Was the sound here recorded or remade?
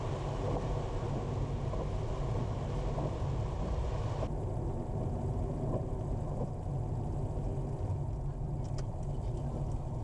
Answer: recorded